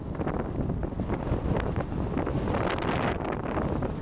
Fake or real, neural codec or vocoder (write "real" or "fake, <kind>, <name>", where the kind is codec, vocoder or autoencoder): real